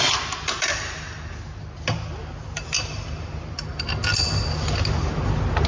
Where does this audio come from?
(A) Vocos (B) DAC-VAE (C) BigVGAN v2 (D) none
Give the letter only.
D